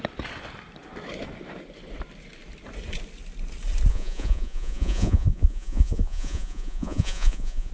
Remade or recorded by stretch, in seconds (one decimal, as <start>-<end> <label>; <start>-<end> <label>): 0.0-3.9 recorded; 3.9-7.7 remade